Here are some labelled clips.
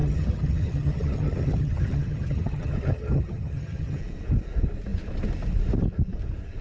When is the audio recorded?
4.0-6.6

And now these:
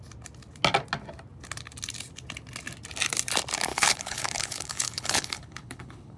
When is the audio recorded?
0.0-3.7

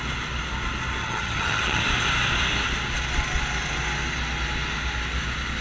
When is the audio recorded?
0.0-1.0; 1.8-5.6